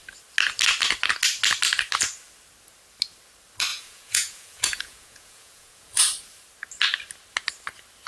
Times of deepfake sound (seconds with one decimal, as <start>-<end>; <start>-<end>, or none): 3.7-6.0